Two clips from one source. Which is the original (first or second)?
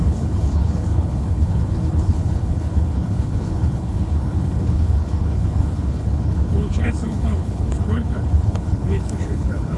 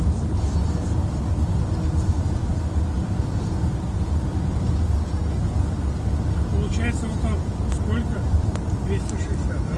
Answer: second